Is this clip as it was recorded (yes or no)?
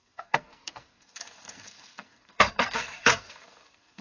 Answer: no